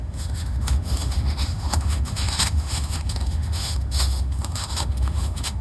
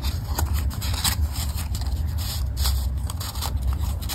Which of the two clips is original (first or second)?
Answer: second